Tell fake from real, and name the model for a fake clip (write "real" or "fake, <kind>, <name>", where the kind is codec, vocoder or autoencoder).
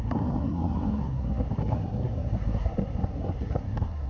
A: fake, codec, SNAC